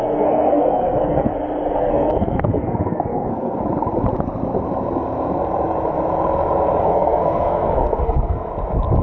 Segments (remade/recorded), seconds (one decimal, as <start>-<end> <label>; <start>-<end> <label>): 0.0-1.3 remade; 1.3-1.8 recorded; 1.8-3.6 remade; 3.6-6.8 recorded; 6.8-8.5 remade; 8.5-9.0 recorded